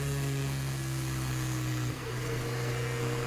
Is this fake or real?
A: fake